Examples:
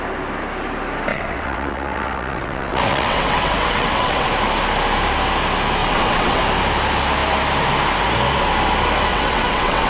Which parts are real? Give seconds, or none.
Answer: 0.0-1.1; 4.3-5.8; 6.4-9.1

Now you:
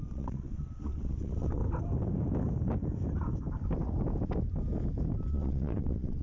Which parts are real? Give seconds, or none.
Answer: 1.6-5.3

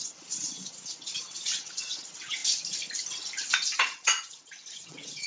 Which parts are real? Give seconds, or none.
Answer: 2.4-3.5

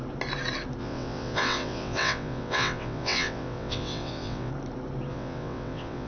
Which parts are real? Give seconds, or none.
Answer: 0.0-0.8; 4.5-5.1

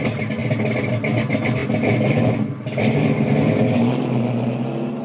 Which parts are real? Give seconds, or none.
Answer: 0.0-5.0